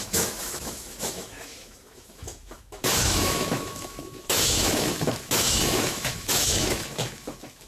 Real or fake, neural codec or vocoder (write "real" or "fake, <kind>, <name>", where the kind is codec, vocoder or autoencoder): fake, autoencoder, DAC-VAE